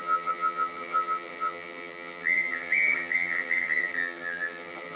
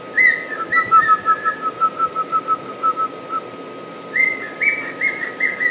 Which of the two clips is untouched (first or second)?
second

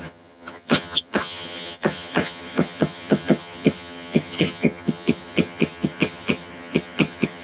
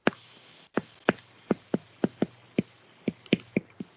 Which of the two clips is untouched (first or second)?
second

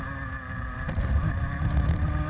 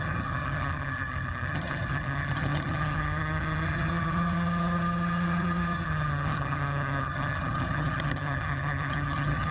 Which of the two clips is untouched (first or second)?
first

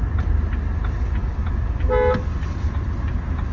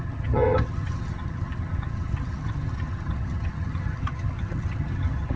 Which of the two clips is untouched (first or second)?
first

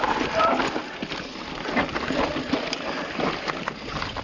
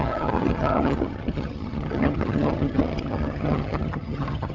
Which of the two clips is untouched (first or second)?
first